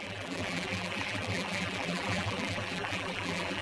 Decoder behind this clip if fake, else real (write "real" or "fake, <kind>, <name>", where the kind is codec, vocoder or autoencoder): fake, vocoder, BigVGAN v2